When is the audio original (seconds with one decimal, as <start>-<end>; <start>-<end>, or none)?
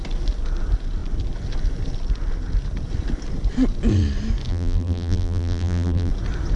0.0-4.5; 6.1-6.6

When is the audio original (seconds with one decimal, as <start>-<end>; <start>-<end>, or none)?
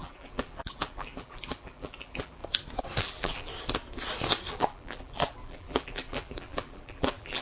2.4-3.0; 3.5-4.5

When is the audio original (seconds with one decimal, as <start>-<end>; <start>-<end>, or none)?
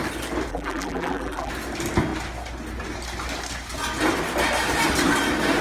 0.0-0.5; 1.5-5.6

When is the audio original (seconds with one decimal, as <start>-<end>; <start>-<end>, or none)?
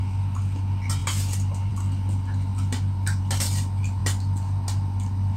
0.0-5.4